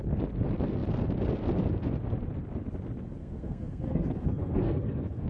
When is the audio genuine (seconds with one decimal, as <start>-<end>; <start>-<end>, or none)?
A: 0.0-3.2